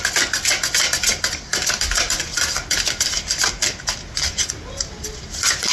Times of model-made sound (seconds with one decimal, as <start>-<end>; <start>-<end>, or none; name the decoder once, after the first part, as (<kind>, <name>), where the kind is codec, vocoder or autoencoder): none